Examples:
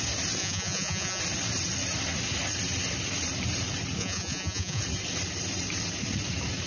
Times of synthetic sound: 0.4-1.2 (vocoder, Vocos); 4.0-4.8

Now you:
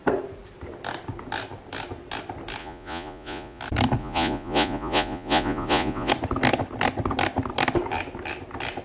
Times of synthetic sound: 2.6-3.6 (vocoder, Vocos); 4.0-6.1

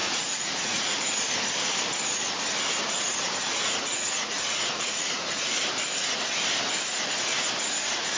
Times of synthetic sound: 0.0-1.0 (vocoder, Vocos); 3.4-5.5

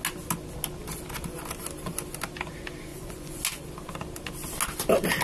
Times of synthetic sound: 2.9-3.4 (vocoder, Vocos)

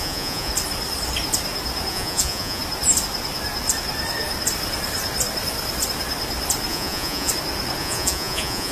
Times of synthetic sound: 0.0-0.5 (vocoder, Vocos); 1.9-2.6; 6.7-7.3; 7.8-8.7

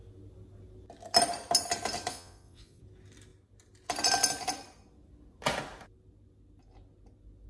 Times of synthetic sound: 2.1-2.8 (vocoder, Vocos)